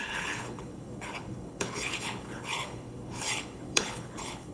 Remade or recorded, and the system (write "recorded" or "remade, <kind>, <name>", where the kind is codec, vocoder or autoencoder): remade, codec, HILCodec